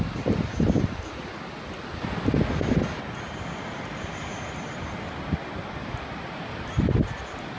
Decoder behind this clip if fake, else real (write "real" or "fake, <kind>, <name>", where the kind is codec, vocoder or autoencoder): real